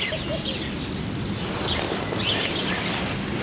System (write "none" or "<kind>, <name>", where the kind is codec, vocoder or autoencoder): none